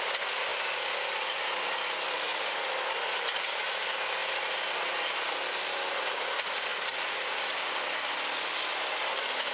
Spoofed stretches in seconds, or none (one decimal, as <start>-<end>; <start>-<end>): none